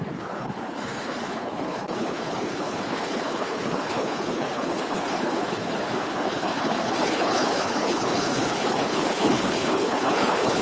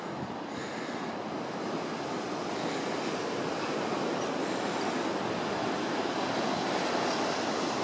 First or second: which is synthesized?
first